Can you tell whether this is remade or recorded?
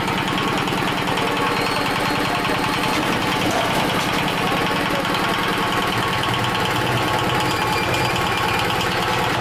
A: recorded